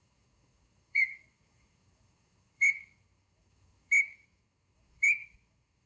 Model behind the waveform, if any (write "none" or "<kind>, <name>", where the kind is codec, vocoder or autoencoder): autoencoder, DAC-VAE